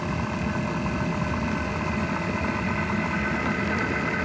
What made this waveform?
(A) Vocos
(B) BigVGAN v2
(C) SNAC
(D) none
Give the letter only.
D